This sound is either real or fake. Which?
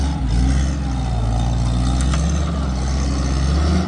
real